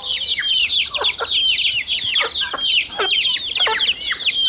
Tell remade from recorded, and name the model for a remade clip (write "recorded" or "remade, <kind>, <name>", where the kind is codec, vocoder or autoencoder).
recorded